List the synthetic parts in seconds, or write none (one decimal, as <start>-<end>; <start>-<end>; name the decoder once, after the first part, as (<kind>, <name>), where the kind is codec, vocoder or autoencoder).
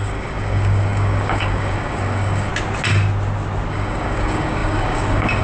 0.0-2.5 (codec, DAC); 3.7-5.4